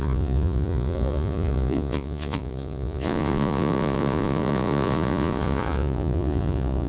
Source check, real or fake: fake